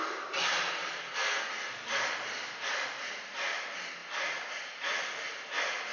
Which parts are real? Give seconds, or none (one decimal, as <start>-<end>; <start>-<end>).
0.0-1.0; 1.5-5.9